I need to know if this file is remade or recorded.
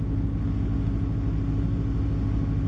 recorded